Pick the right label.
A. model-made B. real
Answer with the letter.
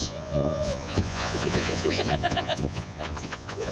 A